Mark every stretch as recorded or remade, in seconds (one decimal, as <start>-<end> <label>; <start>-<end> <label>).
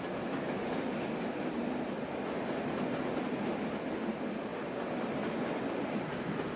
0.0-6.6 recorded